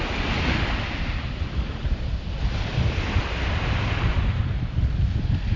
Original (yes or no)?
yes